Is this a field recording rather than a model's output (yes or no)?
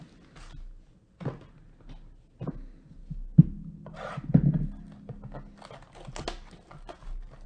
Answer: yes